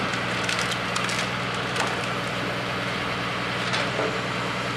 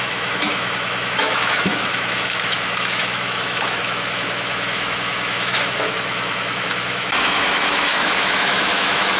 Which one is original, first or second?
first